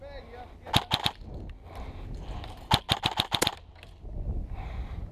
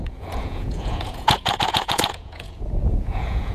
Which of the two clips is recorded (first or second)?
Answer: first